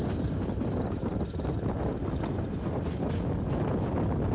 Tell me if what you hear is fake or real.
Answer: real